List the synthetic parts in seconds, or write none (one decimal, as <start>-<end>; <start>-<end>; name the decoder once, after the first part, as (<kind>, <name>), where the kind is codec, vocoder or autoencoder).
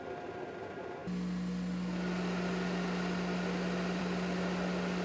none